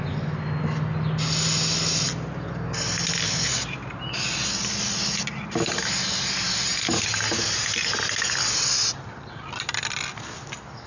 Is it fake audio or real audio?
real